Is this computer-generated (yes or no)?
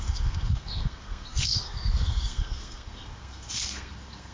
yes